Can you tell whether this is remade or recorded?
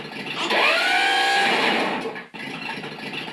recorded